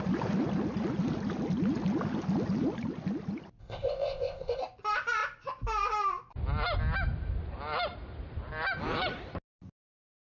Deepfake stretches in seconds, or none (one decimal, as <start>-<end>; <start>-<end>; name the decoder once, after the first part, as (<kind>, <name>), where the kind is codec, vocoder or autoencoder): 3.6-4.6 (codec, ZipCodec)